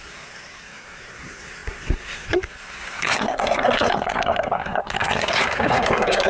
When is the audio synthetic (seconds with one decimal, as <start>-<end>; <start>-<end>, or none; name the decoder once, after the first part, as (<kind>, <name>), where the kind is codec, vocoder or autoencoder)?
0.0-6.3 (codec, SNAC)